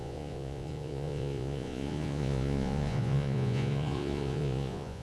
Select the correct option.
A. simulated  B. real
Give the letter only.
A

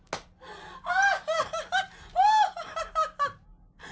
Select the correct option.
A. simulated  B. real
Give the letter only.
B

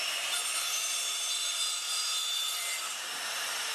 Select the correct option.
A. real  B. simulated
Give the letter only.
B